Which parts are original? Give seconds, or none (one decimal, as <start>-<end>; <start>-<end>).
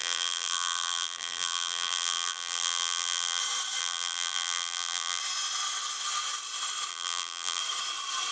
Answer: 3.4-3.8; 5.2-6.9; 7.6-8.3